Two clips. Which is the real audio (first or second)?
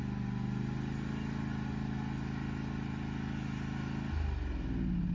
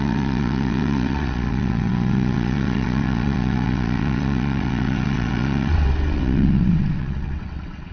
first